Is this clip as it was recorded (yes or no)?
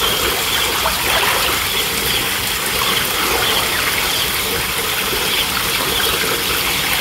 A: yes